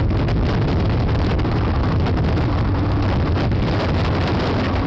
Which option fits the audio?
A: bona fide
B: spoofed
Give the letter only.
A